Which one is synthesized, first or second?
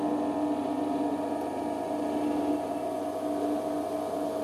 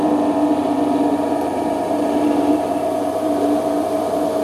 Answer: second